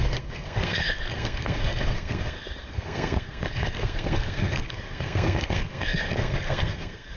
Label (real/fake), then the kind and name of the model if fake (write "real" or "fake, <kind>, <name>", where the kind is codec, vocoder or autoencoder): fake, codec, SNAC